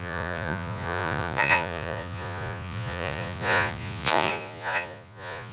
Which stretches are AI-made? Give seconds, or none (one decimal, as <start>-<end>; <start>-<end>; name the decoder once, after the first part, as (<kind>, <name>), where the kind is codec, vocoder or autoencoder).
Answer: 0.0-5.5 (vocoder, Vocos)